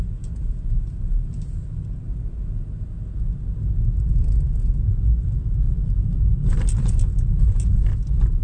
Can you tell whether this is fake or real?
real